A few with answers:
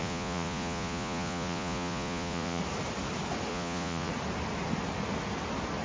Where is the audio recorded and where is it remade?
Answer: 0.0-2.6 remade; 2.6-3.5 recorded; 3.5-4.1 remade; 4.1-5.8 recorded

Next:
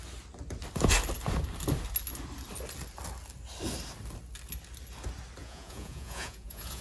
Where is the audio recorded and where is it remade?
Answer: 0.0-5.4 recorded; 5.4-6.8 remade

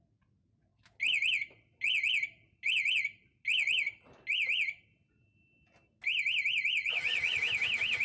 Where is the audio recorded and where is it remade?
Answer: 0.0-6.8 recorded; 6.8-7.4 remade; 7.4-8.0 recorded

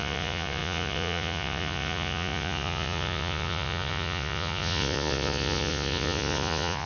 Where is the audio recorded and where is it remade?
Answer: 0.0-6.9 remade

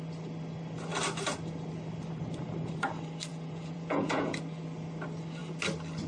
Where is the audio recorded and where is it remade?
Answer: 0.0-3.3 recorded; 3.3-4.4 remade; 4.4-6.1 recorded